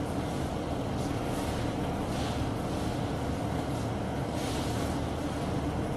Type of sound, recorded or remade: recorded